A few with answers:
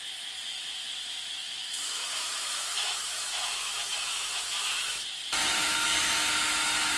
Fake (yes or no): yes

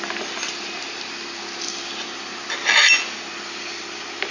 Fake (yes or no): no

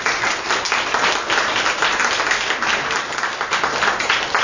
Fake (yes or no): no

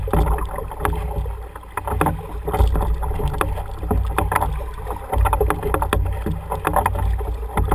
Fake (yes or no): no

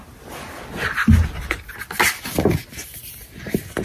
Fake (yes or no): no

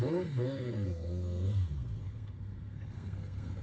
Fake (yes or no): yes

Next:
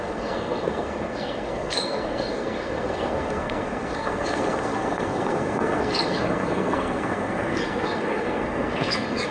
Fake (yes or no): yes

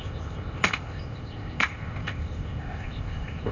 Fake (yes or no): yes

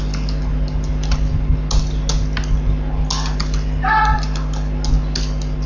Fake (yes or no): no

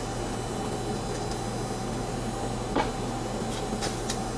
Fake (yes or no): no